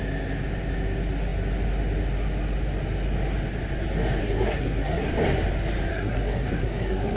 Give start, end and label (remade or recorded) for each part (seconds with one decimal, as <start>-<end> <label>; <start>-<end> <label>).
0.0-4.2 recorded; 4.2-5.1 remade; 5.1-5.9 recorded; 5.9-7.2 remade